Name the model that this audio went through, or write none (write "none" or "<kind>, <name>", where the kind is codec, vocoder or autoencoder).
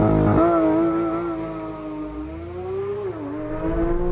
none